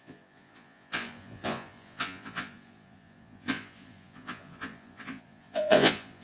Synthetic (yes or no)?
yes